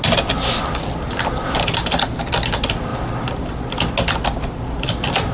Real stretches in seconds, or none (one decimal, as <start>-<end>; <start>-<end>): 0.0-5.3